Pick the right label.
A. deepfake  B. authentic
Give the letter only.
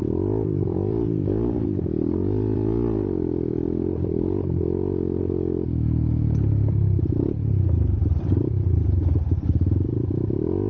A